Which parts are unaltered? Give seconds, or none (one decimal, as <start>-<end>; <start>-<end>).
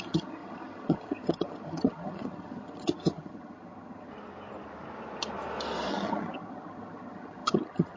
4.1-5.9